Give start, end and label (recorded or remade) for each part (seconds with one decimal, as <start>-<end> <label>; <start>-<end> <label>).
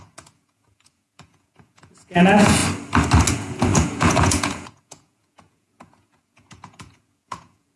0.0-2.6 remade; 2.6-3.3 recorded; 3.3-7.8 remade